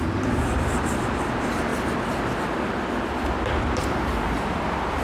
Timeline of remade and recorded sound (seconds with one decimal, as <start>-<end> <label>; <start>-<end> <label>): 0.0-1.7 remade; 1.7-3.6 recorded; 3.6-5.0 remade